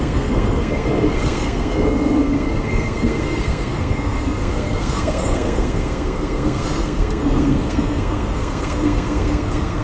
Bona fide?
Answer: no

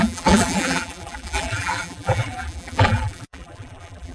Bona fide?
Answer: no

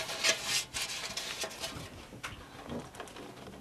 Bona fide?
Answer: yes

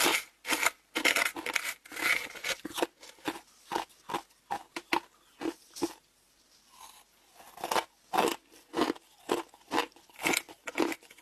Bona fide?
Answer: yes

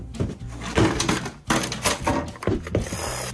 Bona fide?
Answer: yes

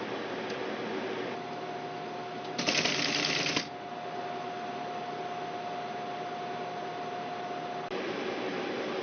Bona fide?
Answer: yes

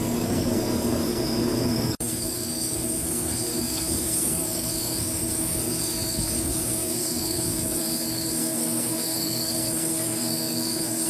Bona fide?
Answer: no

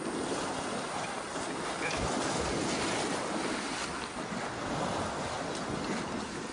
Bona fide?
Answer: yes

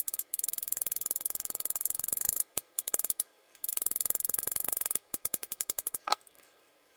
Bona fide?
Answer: no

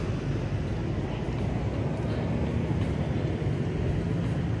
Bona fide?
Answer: yes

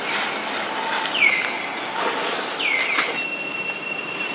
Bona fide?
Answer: yes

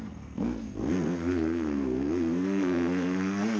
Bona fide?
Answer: no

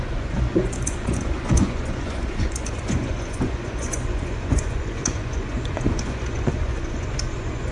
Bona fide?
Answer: no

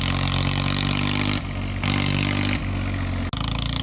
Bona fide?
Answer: yes